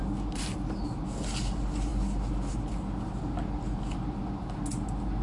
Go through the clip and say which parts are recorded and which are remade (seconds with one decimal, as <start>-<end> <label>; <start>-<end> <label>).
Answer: 0.0-5.2 recorded